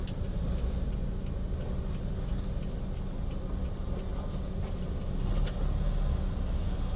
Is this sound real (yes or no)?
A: yes